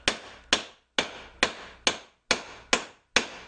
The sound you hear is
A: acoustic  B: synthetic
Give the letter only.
A